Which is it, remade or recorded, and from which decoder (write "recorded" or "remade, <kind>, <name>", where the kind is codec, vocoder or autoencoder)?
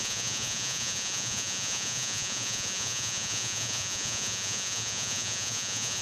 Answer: remade, vocoder, Vocos